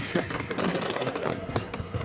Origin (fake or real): fake